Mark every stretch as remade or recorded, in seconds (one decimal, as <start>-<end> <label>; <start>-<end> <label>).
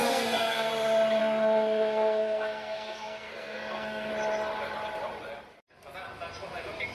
0.0-0.7 remade; 0.7-1.2 recorded; 1.2-4.1 remade; 4.1-6.9 recorded